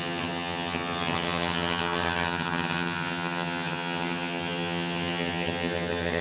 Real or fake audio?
fake